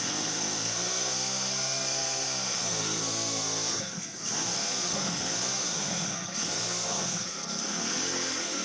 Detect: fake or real fake